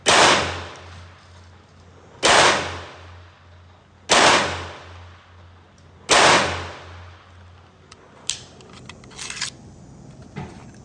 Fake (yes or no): no